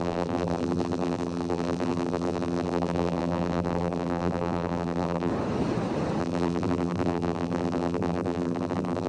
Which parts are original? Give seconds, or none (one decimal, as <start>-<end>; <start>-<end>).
5.3-6.2